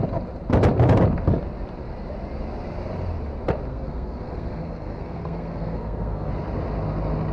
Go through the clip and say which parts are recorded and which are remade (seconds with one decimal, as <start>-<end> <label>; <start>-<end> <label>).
0.0-3.7 recorded; 3.7-6.3 remade; 6.3-7.3 recorded